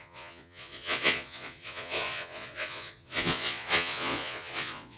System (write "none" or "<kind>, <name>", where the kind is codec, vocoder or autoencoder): vocoder, Vocos